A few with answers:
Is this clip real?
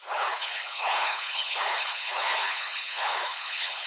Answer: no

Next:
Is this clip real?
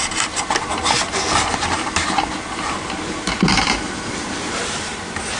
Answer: yes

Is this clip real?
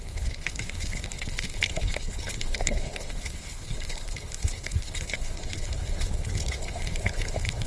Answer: no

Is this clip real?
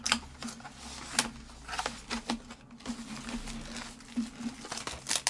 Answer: yes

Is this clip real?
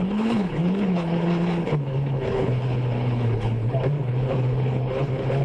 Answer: no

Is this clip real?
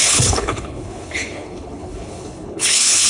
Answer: no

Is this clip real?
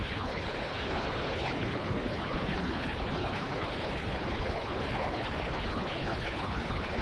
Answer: no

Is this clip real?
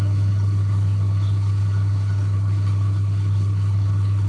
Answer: no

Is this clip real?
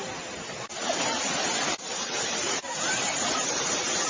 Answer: yes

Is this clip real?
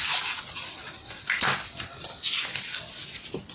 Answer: yes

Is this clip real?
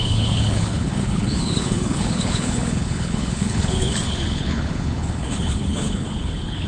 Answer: no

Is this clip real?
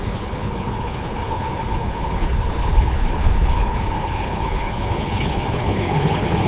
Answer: no